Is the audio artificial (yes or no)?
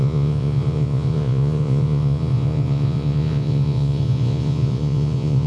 yes